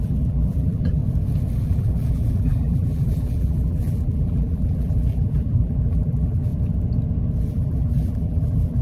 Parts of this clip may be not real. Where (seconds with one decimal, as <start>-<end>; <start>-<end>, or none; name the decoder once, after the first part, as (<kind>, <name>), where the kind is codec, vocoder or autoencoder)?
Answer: 0.0-1.0 (vocoder, BigVGAN v2); 1.6-6.5; 7.5-8.8

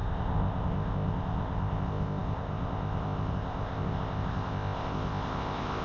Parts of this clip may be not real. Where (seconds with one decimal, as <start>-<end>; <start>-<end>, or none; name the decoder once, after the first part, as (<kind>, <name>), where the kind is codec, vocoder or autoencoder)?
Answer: 0.0-5.8 (codec, ZipCodec)

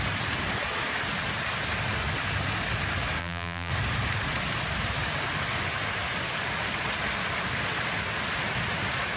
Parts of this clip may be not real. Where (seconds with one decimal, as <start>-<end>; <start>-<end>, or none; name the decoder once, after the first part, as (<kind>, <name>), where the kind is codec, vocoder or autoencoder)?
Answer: 3.2-3.7 (vocoder, BigVGAN v2)

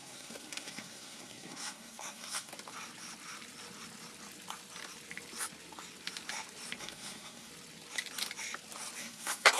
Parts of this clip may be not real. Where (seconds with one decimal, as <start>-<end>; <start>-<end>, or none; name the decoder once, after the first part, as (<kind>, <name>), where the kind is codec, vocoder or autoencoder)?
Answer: 0.0-2.5 (codec, SNAC); 6.8-7.5; 9.0-9.6